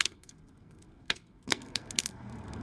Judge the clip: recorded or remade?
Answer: remade